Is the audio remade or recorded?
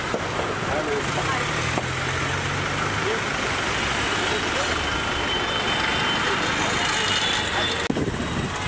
recorded